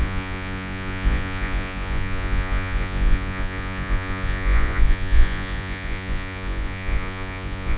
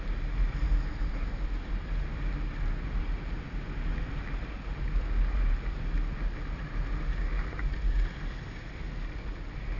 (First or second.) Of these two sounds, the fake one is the first